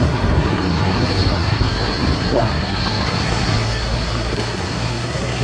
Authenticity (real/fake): fake